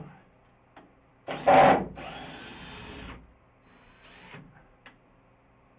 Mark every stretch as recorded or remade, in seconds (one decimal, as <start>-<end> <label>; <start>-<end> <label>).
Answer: 0.0-5.8 recorded